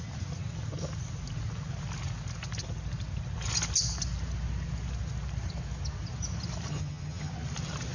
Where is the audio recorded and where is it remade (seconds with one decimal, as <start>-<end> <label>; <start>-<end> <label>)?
0.0-6.7 recorded; 6.7-7.3 remade; 7.3-7.9 recorded

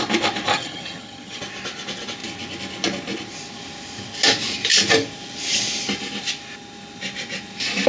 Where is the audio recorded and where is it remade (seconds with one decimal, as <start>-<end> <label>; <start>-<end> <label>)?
0.0-0.5 recorded; 0.5-1.4 remade; 1.4-7.9 recorded

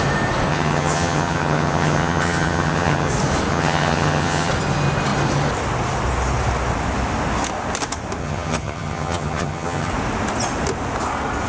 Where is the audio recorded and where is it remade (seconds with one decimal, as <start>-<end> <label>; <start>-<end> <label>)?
0.0-0.5 recorded; 0.5-3.1 remade; 3.1-3.5 recorded; 3.5-4.5 remade; 4.5-8.2 recorded; 8.2-9.9 remade; 9.9-11.5 recorded

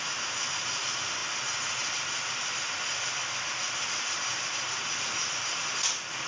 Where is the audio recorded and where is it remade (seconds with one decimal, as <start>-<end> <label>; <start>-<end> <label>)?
0.0-6.3 recorded

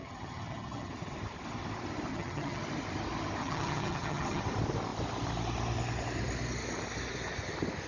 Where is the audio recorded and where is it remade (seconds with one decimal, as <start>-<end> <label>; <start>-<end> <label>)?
0.0-0.9 remade; 0.9-2.1 recorded; 2.1-2.6 remade; 2.6-3.4 recorded; 3.4-4.4 remade; 4.4-7.9 recorded